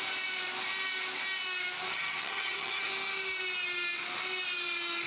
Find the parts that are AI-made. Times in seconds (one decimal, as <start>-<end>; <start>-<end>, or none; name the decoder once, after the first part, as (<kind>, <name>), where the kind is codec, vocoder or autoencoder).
1.9-2.9 (vocoder, HiFi-GAN)